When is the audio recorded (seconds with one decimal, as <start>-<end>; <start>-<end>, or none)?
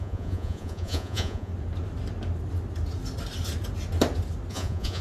1.5-4.5